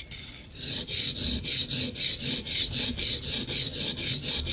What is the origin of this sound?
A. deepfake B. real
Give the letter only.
A